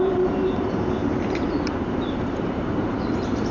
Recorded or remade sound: remade